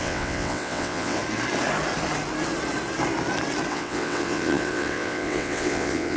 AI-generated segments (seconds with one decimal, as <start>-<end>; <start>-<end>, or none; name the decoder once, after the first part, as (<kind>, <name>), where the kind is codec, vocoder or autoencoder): 0.0-1.2 (vocoder, WaveNeXt); 3.7-6.2